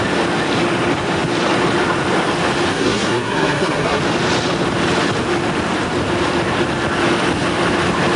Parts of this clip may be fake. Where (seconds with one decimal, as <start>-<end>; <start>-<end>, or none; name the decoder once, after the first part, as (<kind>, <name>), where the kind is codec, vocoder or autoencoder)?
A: 2.7-4.0 (codec, SNAC)